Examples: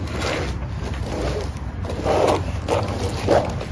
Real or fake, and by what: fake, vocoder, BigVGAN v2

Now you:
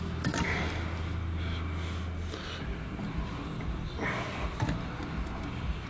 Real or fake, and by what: real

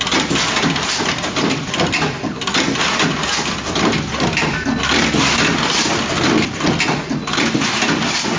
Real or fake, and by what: real